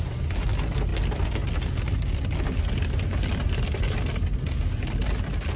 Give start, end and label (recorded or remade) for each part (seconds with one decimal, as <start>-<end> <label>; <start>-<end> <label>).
0.0-5.6 recorded